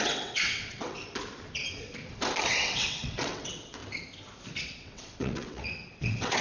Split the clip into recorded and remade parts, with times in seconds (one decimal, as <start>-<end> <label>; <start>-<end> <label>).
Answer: 0.0-1.0 remade; 1.0-2.5 recorded; 2.5-3.8 remade; 3.8-4.6 recorded; 4.6-6.4 remade